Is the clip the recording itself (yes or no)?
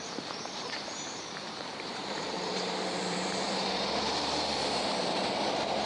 no